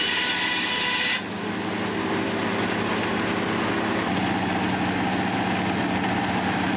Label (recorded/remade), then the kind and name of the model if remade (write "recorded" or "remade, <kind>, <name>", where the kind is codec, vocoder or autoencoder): recorded